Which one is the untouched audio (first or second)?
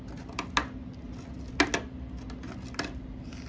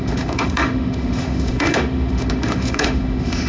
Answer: first